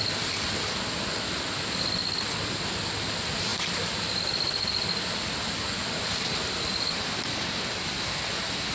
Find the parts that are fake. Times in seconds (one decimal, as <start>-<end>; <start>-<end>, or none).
none